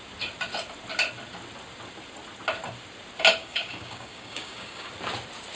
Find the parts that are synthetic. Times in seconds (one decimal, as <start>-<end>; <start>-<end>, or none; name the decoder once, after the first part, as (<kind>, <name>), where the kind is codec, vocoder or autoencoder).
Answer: 3.4-4.9 (codec, DAC)